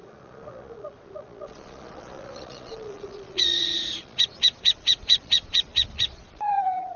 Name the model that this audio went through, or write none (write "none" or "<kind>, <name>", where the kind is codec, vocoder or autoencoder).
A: vocoder, Vocos